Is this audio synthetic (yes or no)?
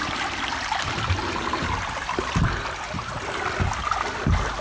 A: no